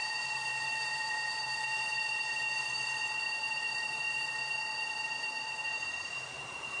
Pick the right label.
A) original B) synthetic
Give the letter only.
B